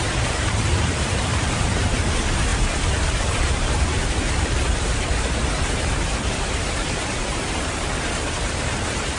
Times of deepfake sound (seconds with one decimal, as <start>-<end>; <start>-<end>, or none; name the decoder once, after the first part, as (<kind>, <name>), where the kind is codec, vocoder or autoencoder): 0.0-9.2 (vocoder, BigVGAN v2)